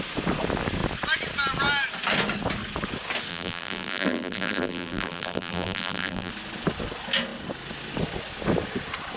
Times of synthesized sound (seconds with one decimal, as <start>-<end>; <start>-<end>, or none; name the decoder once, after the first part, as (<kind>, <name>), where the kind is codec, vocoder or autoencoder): 3.3-6.3 (vocoder, BigVGAN v2)